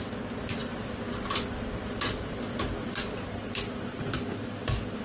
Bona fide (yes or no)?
yes